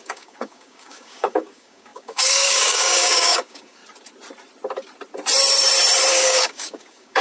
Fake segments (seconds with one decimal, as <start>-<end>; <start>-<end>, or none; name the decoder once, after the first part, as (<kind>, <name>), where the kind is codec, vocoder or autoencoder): 0.0-3.8 (codec, DAC); 6.1-7.2

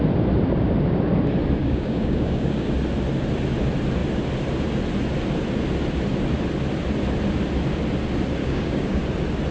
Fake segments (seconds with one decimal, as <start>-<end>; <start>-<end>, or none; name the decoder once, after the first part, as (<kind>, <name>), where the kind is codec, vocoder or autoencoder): 1.6-2.7 (codec, DAC); 8.4-9.0

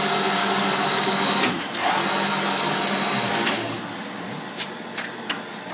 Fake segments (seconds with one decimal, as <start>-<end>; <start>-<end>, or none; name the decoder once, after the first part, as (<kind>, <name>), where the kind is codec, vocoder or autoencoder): 0.4-1.5 (codec, DAC); 2.3-2.8; 3.3-3.8

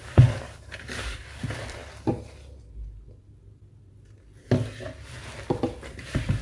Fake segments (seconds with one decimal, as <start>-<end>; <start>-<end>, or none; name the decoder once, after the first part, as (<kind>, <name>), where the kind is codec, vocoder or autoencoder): 0.0-1.4 (codec, DAC)

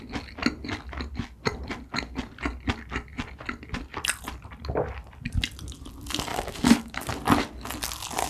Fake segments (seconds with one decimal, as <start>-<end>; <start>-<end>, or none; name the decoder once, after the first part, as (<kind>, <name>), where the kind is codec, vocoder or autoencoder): 6.3-7.1 (codec, DAC)

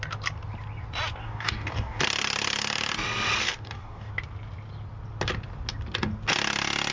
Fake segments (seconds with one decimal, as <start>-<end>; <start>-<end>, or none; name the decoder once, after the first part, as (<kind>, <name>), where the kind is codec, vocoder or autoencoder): 1.2-2.0 (codec, DAC); 3.4-4.1

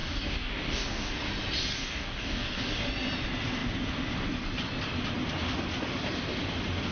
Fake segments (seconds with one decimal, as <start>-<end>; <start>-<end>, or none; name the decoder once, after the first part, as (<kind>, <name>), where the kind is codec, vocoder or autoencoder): 0.0-1.1 (codec, DAC); 1.7-2.7